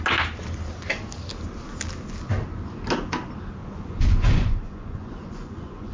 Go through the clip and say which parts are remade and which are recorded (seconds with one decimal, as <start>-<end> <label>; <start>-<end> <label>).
0.0-3.6 recorded; 3.6-5.9 remade

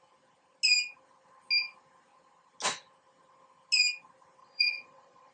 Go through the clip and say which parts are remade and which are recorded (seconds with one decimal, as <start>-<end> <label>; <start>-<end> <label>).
0.0-4.4 recorded; 4.4-5.3 remade

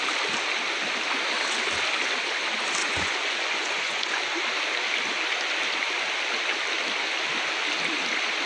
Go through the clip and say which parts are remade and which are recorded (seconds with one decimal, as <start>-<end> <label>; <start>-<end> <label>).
0.0-2.8 recorded; 2.8-4.2 remade; 4.2-8.5 recorded

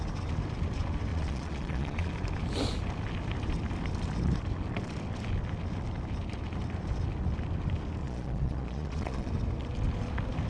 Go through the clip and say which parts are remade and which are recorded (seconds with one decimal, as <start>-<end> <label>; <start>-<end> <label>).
0.0-1.1 recorded; 1.1-2.1 remade; 2.1-8.0 recorded; 8.0-9.3 remade; 9.3-10.5 recorded

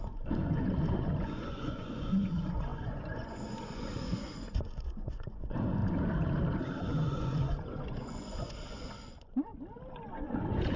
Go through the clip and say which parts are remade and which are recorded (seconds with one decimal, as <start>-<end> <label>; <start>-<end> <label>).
0.0-5.8 remade; 5.8-6.8 recorded; 6.8-9.5 remade; 9.5-10.1 recorded; 10.1-10.8 remade

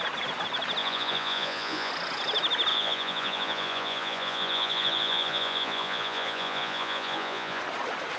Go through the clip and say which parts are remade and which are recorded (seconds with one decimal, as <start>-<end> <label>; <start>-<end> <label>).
0.0-0.8 recorded; 0.8-1.9 remade; 1.9-2.7 recorded; 2.7-7.6 remade; 7.6-8.2 recorded

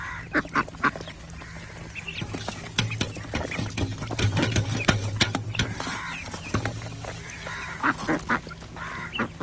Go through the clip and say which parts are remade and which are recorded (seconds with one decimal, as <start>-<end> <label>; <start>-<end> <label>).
0.0-9.4 recorded